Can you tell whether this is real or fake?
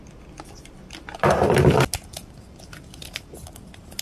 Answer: real